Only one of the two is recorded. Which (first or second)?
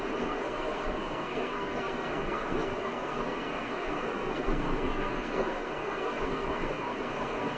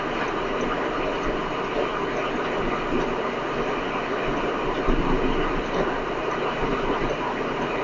second